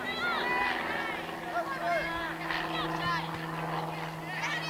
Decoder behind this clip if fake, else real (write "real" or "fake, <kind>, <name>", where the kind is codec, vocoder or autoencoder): real